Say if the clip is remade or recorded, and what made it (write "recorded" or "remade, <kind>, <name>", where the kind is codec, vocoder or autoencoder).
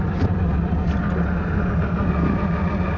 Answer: recorded